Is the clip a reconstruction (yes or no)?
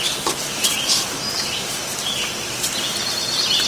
no